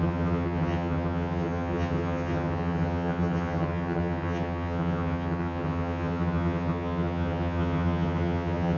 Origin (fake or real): fake